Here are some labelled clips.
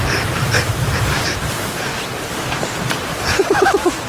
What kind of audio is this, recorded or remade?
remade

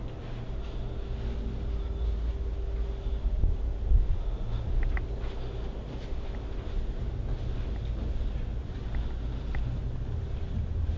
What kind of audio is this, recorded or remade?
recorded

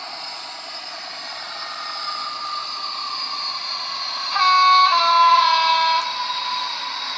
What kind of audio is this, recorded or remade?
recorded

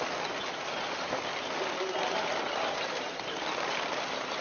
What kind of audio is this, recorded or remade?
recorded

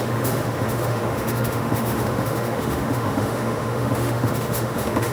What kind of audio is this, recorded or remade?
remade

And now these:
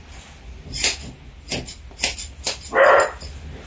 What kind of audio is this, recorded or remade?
recorded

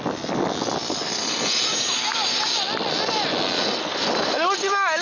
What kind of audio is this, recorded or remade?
recorded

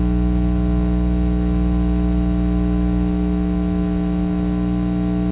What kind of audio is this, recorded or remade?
recorded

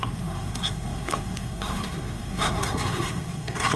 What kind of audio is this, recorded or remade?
remade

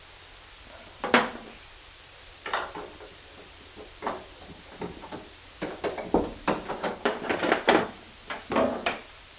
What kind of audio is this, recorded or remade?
remade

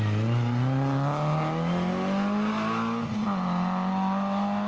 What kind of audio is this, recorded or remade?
recorded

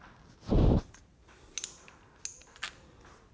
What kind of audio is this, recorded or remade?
recorded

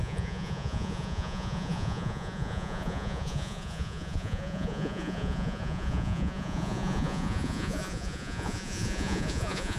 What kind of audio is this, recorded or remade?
remade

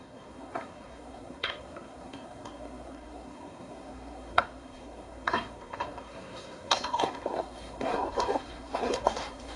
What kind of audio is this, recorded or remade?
remade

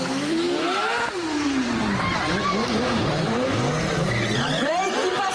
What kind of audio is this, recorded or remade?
remade